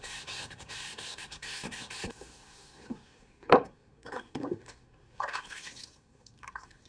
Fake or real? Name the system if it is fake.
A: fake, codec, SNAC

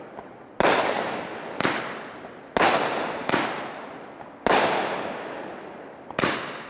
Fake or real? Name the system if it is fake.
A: real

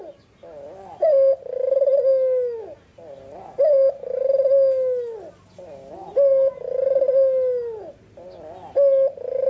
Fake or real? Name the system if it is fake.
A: real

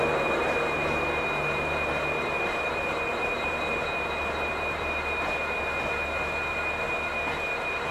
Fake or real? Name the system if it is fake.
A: real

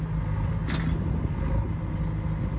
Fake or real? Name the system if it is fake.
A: real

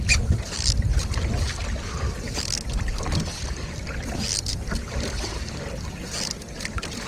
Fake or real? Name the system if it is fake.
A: real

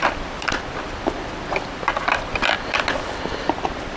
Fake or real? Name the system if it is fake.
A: fake, vocoder, BigVGAN v2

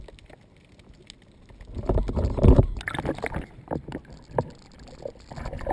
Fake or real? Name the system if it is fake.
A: real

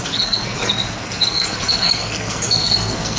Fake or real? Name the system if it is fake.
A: fake, codec, SNAC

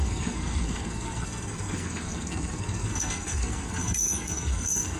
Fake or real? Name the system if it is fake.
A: fake, codec, SNAC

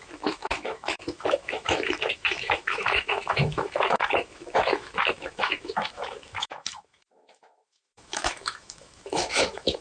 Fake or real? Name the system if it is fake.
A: fake, autoencoder, DAC-VAE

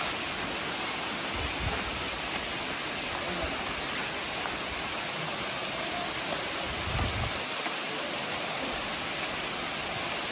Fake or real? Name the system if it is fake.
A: real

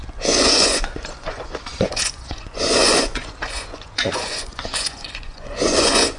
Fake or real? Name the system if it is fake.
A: fake, vocoder, Vocos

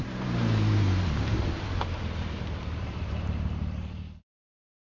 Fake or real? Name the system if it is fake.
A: fake, vocoder, BigVGAN v2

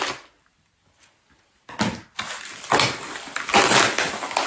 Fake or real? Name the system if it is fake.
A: real